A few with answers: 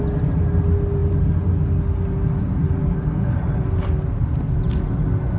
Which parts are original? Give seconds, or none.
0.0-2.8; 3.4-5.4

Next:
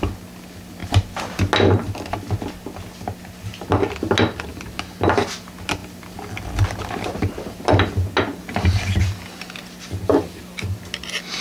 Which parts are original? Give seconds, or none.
0.0-11.4